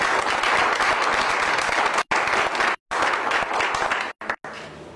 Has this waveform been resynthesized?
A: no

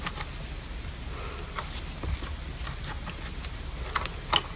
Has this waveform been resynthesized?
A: no